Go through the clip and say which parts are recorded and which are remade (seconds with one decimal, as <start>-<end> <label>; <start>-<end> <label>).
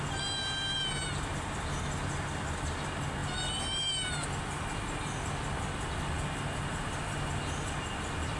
0.0-8.4 recorded